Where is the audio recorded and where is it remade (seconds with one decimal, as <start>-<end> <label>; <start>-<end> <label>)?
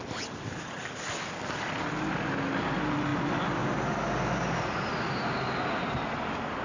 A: 0.0-6.6 recorded